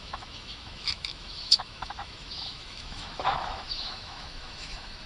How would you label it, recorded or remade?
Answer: remade